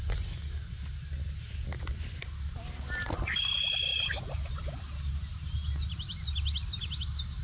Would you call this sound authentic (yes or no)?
yes